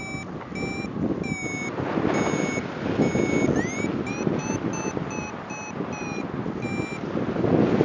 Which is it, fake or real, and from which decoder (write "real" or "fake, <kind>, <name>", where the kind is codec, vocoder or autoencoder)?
real